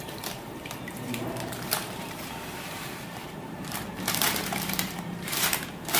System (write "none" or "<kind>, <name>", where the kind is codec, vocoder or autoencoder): vocoder, BigVGAN v2